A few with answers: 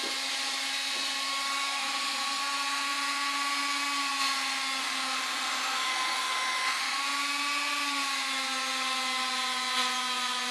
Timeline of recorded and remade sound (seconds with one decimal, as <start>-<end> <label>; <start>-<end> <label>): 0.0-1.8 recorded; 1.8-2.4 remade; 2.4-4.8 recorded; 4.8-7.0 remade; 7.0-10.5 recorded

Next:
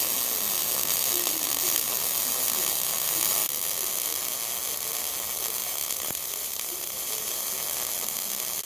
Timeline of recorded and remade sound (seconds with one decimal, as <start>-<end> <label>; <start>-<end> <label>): 0.0-5.6 recorded; 5.6-7.5 remade; 7.5-8.7 recorded

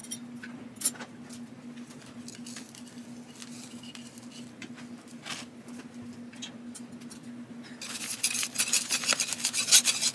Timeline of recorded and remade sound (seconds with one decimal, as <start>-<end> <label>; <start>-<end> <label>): 0.0-10.1 recorded

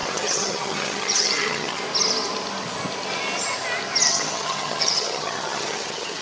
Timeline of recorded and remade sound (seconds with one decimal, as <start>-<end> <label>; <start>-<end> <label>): 0.0-1.8 remade; 1.8-4.1 recorded; 4.1-6.2 remade